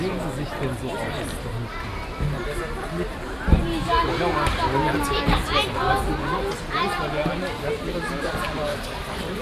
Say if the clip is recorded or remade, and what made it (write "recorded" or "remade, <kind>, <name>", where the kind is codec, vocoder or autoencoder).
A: recorded